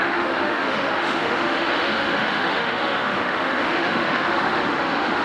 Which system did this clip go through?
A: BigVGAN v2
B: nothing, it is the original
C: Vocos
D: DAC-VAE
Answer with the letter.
D